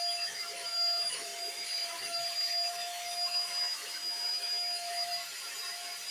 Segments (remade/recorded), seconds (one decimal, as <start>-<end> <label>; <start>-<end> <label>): 0.0-5.1 remade; 5.1-6.1 recorded